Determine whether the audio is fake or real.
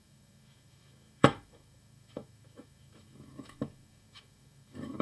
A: fake